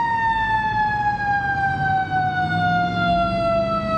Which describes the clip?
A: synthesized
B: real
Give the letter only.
B